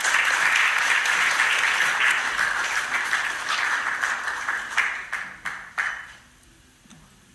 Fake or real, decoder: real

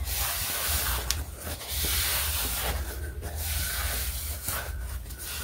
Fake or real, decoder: real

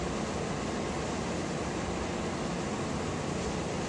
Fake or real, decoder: real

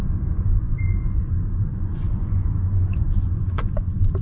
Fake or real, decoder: fake, vocoder, Vocos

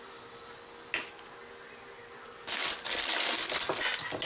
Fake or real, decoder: real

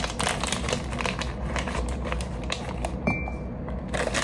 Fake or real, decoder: real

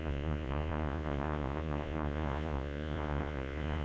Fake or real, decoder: fake, vocoder, Vocos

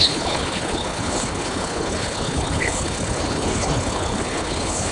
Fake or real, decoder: fake, codec, HILCodec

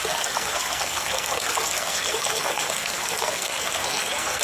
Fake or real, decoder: fake, codec, SNAC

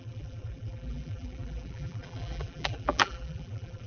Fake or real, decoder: fake, vocoder, BigVGAN v2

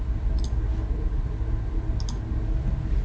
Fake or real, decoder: real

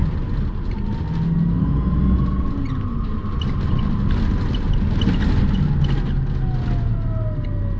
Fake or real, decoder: real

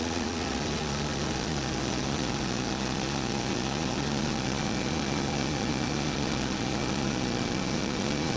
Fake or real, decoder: fake, vocoder, Vocos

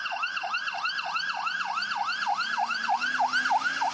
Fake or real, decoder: real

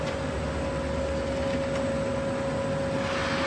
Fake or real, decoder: real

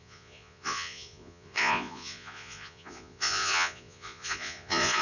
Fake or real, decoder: fake, vocoder, Vocos